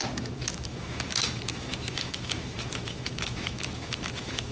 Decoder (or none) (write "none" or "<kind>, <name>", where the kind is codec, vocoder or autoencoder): autoencoder, DAC-VAE